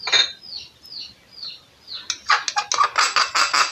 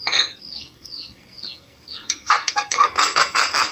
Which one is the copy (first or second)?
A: second